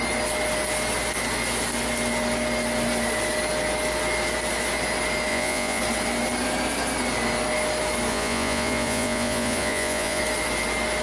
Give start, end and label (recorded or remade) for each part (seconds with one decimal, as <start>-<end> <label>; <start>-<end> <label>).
0.0-5.3 recorded; 5.3-5.8 remade; 5.8-8.1 recorded; 8.1-10.2 remade; 10.2-11.0 recorded